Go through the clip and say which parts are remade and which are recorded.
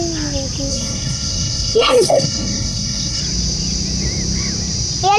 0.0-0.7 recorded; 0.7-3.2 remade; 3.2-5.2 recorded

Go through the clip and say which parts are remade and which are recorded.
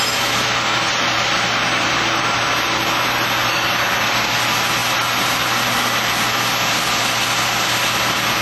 0.0-8.4 recorded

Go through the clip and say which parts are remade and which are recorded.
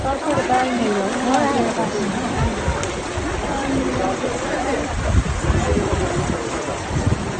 0.0-2.1 recorded; 2.1-3.9 remade; 3.9-6.3 recorded; 6.3-7.4 remade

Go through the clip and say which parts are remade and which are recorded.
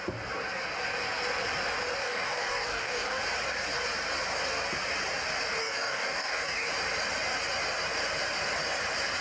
0.0-2.0 recorded; 2.0-3.2 remade; 3.2-5.6 recorded; 5.6-6.7 remade; 6.7-9.2 recorded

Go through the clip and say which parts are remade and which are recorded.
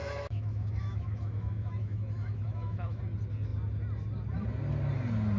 0.0-3.0 remade; 3.0-5.4 recorded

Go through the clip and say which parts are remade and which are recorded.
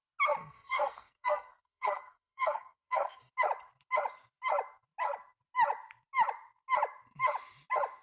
0.0-0.4 recorded; 0.4-3.3 remade; 3.3-8.0 recorded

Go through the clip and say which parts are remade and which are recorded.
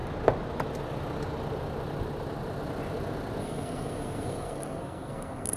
0.0-3.4 recorded; 3.4-5.6 remade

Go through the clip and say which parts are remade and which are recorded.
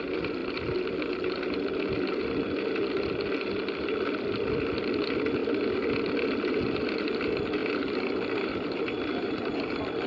0.0-10.1 recorded